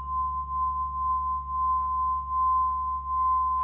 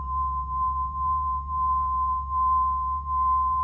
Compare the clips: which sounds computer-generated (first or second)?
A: second